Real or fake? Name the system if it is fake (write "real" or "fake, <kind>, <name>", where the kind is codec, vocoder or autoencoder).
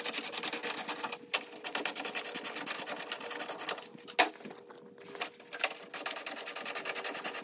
real